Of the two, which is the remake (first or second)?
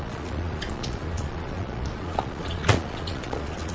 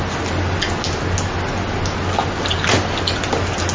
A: first